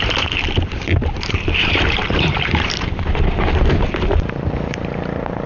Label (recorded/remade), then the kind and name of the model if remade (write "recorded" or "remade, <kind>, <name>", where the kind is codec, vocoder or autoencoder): remade, vocoder, BigVGAN v2